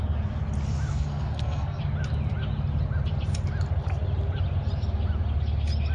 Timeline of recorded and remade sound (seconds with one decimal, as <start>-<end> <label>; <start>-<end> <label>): 0.0-0.9 recorded; 0.9-1.8 remade; 1.8-5.9 recorded